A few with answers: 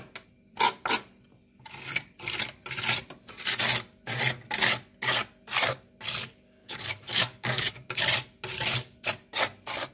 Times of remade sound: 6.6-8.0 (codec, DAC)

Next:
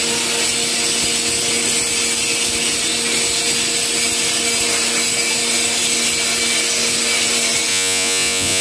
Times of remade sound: 7.7-8.6 (vocoder, Vocos)